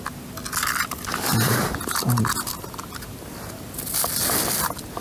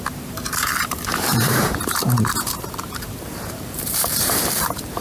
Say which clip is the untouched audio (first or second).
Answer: first